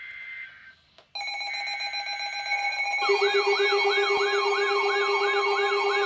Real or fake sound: real